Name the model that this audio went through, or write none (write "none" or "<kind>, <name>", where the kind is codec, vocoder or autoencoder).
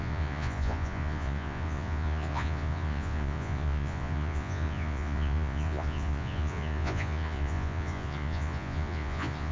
vocoder, Vocos